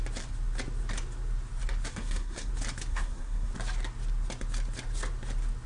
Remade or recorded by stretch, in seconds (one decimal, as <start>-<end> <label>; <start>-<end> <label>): 0.0-1.9 recorded; 1.9-2.5 remade; 2.5-2.9 recorded; 2.9-3.5 remade; 3.5-5.7 recorded